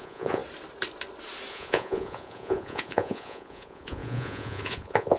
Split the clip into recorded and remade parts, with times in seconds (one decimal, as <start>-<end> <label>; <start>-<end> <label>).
0.0-0.4 remade; 0.4-1.5 recorded; 1.5-5.2 remade